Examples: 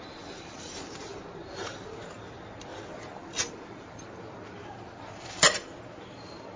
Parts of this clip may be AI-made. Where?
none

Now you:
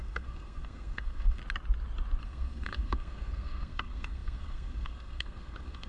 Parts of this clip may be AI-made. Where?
0.0-1.4 (codec, SNAC); 2.2-5.9